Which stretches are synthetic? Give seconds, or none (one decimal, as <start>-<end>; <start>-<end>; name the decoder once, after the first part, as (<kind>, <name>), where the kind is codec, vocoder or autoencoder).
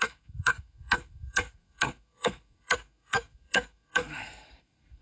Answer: 0.0-5.0 (codec, SNAC)